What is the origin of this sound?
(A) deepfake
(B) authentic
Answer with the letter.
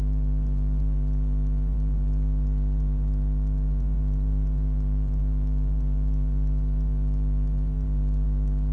A